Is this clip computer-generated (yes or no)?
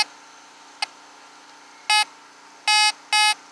no